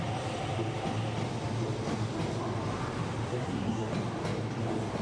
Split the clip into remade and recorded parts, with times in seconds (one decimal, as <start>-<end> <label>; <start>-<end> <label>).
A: 0.0-3.3 recorded; 3.3-3.9 remade; 3.9-5.0 recorded